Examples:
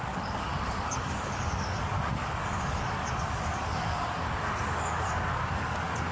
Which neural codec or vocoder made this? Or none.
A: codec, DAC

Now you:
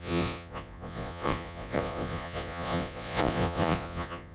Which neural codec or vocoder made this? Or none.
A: vocoder, Vocos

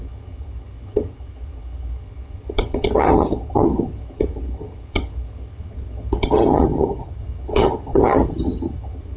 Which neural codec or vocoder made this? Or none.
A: vocoder, HiFi-GAN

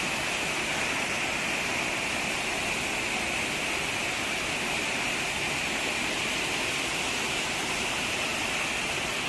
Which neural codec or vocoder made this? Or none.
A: none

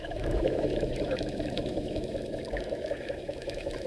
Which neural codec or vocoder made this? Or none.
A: autoencoder, DAC-VAE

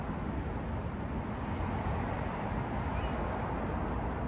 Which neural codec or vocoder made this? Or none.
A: none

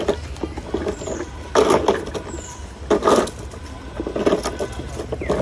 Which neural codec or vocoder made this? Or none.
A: none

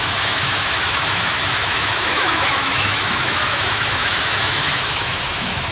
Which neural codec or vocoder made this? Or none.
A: autoencoder, DAC-VAE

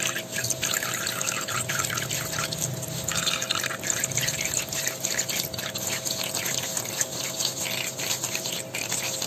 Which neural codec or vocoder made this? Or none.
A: none